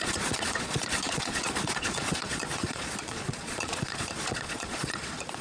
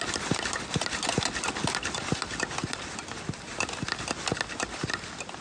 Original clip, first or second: second